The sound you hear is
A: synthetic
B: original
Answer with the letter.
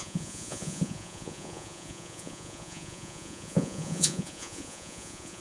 A